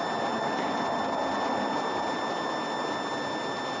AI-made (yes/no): no